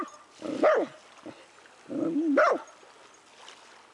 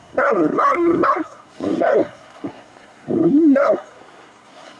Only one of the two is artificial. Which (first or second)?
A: second